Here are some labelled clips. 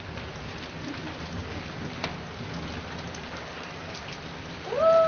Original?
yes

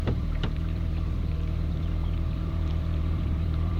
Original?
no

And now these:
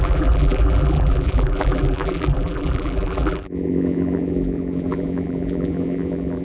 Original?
no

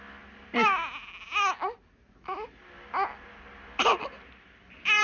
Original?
no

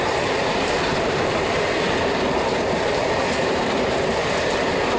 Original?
no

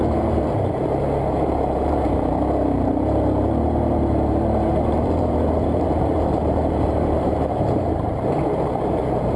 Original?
no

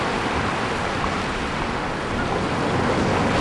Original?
yes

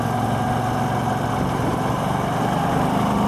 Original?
yes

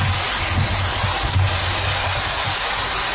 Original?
yes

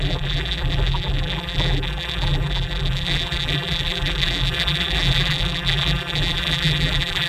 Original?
no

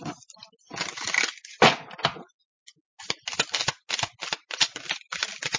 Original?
yes